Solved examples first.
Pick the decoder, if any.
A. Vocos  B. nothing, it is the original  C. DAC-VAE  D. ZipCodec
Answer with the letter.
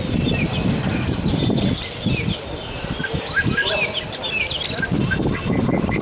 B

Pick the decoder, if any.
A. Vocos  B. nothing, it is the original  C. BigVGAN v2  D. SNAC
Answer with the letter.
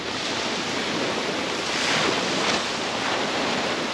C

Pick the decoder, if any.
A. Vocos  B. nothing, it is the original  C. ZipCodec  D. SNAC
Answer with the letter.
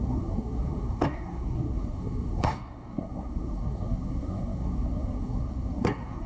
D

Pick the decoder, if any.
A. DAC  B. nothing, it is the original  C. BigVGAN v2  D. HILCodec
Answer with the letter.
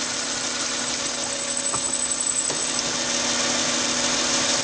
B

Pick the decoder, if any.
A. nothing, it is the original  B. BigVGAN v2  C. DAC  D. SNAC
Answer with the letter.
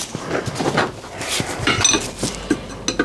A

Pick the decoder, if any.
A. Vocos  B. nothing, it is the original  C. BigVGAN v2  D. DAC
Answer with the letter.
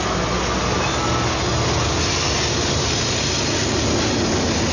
B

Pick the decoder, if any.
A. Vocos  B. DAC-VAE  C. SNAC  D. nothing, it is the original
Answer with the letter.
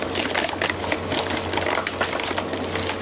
D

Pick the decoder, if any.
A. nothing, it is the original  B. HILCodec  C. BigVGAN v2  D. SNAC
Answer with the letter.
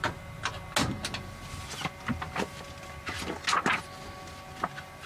A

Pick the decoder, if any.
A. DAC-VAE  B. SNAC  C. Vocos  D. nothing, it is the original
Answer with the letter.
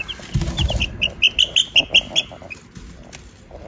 D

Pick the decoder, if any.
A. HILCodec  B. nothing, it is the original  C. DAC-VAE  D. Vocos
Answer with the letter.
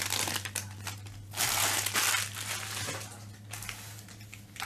B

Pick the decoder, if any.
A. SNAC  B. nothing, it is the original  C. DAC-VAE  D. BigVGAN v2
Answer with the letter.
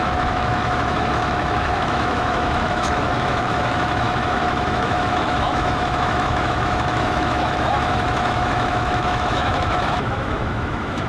C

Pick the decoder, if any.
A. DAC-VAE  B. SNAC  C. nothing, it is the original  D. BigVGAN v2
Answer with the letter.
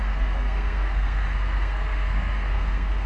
B